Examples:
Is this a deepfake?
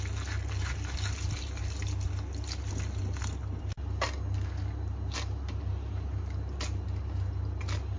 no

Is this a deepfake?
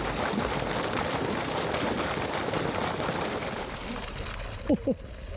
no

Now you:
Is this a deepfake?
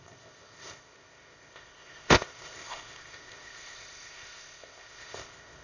yes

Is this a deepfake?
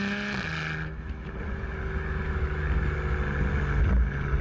no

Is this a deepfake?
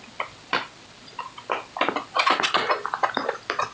no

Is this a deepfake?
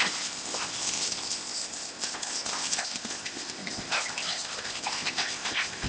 yes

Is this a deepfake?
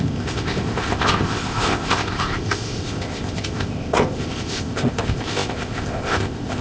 yes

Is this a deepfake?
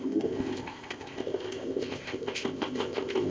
yes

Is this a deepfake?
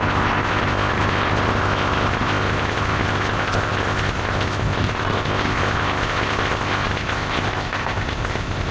yes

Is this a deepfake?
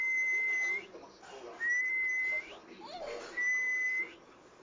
no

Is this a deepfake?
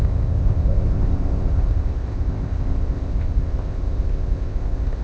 yes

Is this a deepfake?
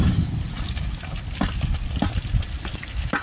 no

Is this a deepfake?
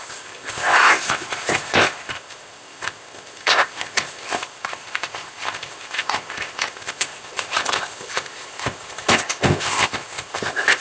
yes